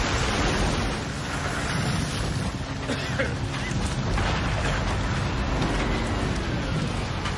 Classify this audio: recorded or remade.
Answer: recorded